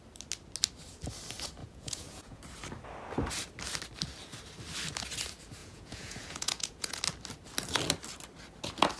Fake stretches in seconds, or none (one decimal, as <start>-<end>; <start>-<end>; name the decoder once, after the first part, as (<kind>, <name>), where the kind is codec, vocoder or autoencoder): 1.6-2.4 (vocoder, Vocos); 5.6-7.0